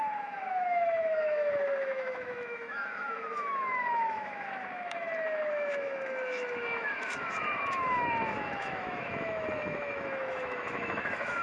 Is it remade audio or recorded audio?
remade